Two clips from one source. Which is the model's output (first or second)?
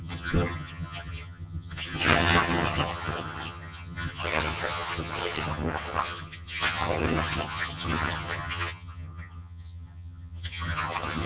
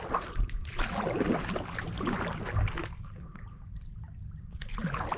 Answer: first